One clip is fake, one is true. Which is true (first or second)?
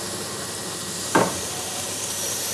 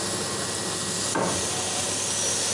second